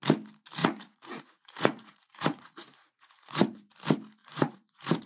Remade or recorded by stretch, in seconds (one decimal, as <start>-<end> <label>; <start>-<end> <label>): 0.0-0.6 recorded; 0.6-3.7 remade; 3.7-4.2 recorded; 4.2-5.1 remade